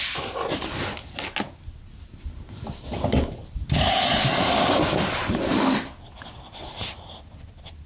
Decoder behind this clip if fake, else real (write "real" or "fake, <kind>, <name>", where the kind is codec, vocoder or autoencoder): real